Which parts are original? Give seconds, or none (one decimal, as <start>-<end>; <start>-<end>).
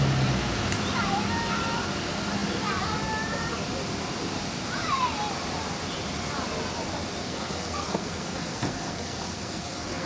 0.0-7.2